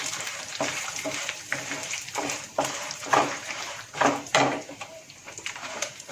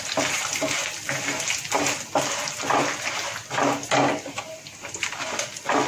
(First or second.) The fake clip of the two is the first